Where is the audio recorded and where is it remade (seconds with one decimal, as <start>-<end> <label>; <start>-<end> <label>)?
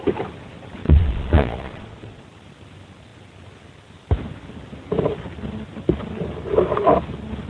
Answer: 0.0-0.8 recorded; 0.8-2.2 remade; 2.2-7.5 recorded